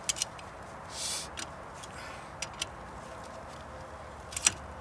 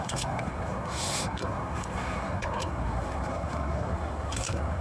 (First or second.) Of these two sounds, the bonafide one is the first